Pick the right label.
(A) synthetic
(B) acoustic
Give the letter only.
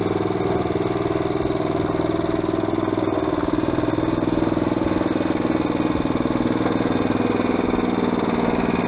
B